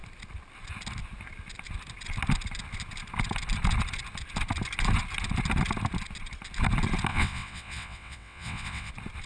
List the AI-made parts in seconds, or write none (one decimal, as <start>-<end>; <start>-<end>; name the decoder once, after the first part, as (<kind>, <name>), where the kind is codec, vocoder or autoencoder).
7.1-8.9 (vocoder, WaveNeXt)